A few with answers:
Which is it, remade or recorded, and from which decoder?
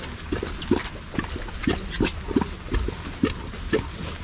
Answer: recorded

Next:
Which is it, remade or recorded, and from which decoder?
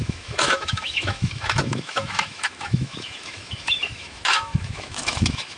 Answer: remade, autoencoder, DAC-VAE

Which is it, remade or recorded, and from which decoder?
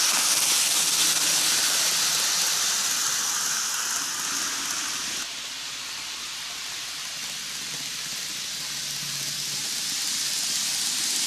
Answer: recorded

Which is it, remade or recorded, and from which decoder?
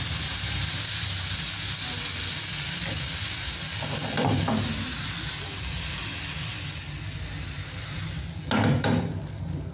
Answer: recorded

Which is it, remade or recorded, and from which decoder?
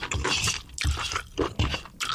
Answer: recorded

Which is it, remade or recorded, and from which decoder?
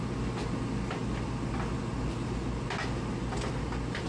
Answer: recorded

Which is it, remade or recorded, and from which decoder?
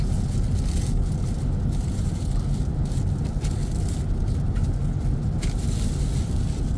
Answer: recorded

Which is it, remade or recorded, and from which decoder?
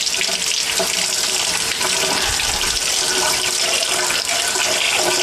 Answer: recorded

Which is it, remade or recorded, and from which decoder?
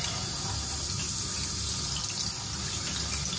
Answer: recorded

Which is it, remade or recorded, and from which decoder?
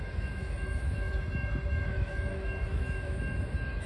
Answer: remade, autoencoder, DAC-VAE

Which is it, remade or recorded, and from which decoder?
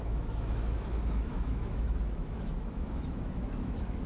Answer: remade, autoencoder, DAC-VAE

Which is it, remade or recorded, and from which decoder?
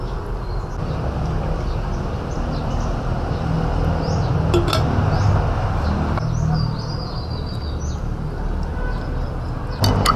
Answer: recorded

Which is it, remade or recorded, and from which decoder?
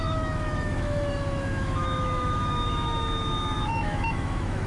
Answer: remade, autoencoder, DAC-VAE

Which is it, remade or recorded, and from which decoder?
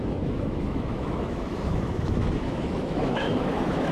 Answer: remade, autoencoder, DAC-VAE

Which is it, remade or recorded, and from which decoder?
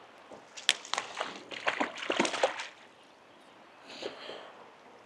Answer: recorded